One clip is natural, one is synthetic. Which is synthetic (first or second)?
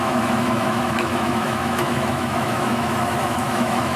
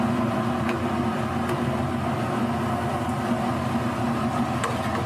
first